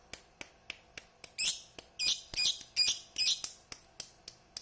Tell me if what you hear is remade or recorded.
recorded